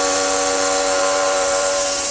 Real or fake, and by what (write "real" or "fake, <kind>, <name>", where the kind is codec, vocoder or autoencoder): fake, vocoder, BigVGAN v2